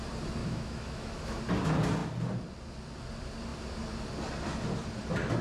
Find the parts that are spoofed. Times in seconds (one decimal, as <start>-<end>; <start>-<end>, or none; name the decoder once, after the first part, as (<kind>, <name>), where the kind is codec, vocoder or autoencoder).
0.4-1.4 (autoencoder, DAC-VAE)